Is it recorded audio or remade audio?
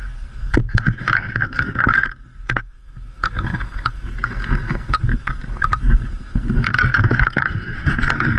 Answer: remade